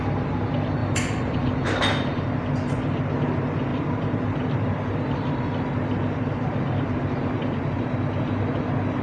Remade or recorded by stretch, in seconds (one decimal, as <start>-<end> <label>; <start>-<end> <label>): 0.0-0.8 recorded; 0.8-1.8 remade; 1.8-3.7 recorded; 3.7-7.8 remade; 7.8-9.0 recorded